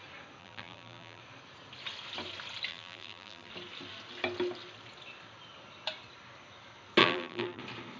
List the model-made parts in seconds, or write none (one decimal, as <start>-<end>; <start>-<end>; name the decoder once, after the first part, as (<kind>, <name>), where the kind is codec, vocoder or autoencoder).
0.4-1.2 (vocoder, BigVGAN v2); 2.7-3.5; 7.0-7.6